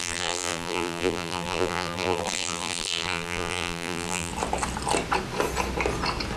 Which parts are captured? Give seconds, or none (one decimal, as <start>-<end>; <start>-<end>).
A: 4.3-6.4